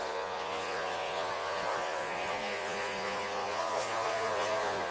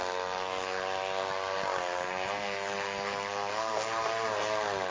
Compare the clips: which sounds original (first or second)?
second